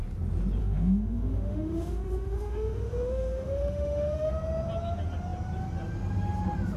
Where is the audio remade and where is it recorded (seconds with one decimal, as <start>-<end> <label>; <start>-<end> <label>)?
0.0-0.6 recorded; 0.6-4.3 remade; 4.3-6.8 recorded